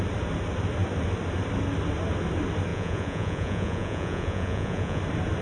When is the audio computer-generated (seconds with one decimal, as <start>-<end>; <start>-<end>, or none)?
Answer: 2.7-5.0